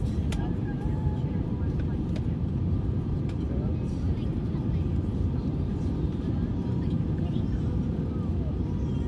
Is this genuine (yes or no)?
no